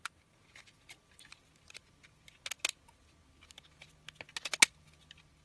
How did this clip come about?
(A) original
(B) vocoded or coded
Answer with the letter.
A